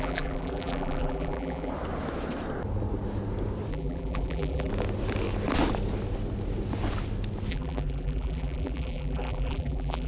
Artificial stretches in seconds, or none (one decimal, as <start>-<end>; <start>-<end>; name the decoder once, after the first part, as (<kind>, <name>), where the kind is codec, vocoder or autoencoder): 0.0-1.7 (vocoder, BigVGAN v2); 3.7-4.7; 7.5-10.1